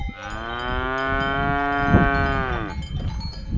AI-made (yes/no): no